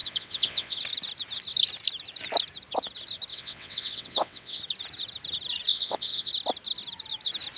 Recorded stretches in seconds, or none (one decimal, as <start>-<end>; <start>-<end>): 0.8-3.3; 4.6-5.7; 6.3-7.6